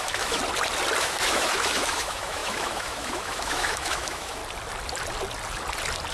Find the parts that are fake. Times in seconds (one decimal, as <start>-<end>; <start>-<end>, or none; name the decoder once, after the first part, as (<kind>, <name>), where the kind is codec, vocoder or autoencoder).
0.0-0.4 (autoencoder, DAC-VAE); 1.0-4.4